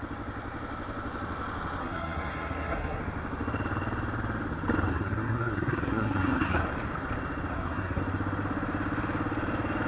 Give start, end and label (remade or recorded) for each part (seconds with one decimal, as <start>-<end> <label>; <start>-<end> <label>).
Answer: 0.0-1.8 recorded; 1.8-3.0 remade; 3.0-4.9 recorded; 4.9-6.7 remade; 6.7-7.5 recorded; 7.5-8.0 remade; 8.0-9.9 recorded